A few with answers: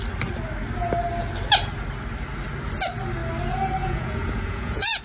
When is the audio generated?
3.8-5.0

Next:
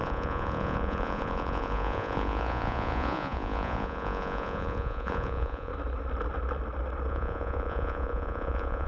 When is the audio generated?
0.0-5.7; 7.1-8.9

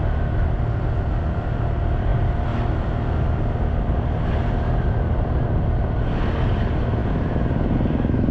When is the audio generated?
none

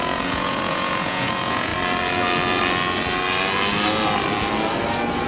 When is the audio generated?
0.0-1.7

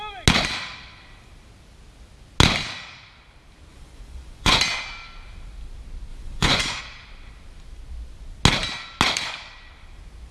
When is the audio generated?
3.7-4.6; 6.1-6.8